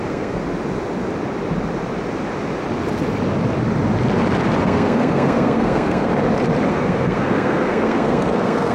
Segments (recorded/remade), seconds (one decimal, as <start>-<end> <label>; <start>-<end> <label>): 0.0-0.4 remade; 0.4-4.6 recorded; 4.6-6.1 remade; 6.1-6.7 recorded; 6.7-8.7 remade